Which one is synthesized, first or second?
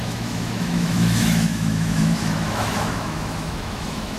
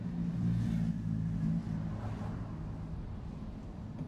first